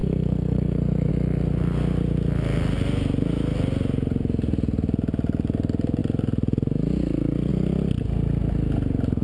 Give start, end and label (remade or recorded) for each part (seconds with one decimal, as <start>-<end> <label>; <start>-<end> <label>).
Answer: 0.0-1.1 remade; 1.1-9.2 recorded